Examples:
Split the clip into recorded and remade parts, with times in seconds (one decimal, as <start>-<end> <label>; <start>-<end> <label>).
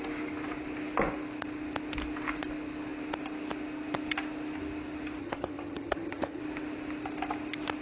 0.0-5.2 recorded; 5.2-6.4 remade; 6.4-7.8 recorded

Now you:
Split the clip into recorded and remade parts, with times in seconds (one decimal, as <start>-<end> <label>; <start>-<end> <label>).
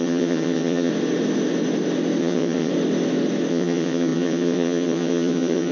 0.0-0.9 remade; 0.9-2.2 recorded; 2.2-2.7 remade; 2.7-3.5 recorded; 3.5-5.7 remade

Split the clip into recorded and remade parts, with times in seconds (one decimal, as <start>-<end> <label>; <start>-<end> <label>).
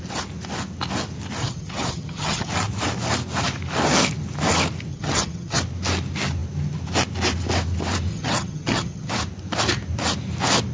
0.0-1.4 recorded; 1.4-2.5 remade; 2.5-4.9 recorded; 4.9-5.6 remade; 5.6-8.1 recorded; 8.1-9.1 remade; 9.1-10.7 recorded